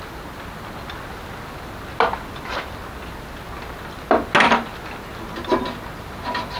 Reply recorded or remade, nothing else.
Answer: recorded